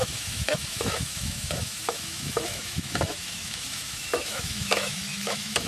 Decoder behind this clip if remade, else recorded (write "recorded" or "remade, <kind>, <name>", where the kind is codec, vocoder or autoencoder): remade, autoencoder, DAC-VAE